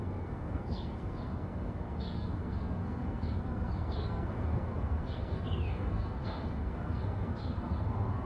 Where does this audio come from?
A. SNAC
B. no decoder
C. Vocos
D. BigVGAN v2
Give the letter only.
A